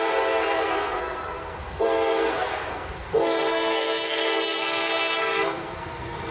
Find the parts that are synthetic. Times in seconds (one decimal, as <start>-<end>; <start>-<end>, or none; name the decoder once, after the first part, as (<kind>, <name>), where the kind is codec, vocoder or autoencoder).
0.0-6.3 (codec, SNAC)